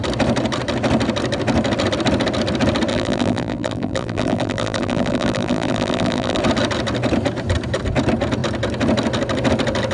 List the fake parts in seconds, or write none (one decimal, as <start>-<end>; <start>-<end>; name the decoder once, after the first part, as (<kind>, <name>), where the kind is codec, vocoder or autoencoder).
2.9-6.4 (vocoder, BigVGAN v2)